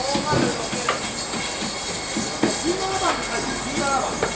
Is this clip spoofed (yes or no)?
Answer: no